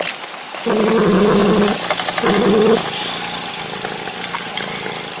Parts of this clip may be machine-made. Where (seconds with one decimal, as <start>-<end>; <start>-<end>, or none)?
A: none